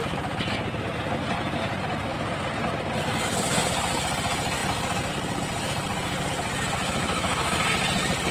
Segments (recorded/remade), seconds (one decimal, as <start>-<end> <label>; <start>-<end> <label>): 0.0-6.8 recorded; 6.8-7.6 remade; 7.6-8.3 recorded